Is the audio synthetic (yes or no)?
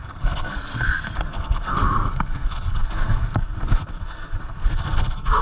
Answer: yes